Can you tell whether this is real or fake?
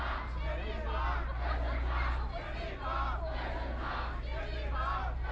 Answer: real